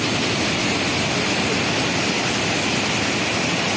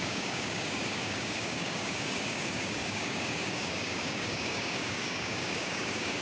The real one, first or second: first